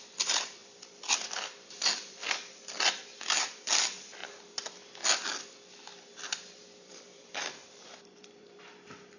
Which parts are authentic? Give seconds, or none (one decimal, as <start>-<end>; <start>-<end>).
4.2-5.4